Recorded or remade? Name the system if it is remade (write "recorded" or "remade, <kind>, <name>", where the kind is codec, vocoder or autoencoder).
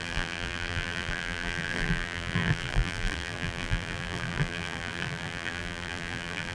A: remade, vocoder, BigVGAN v2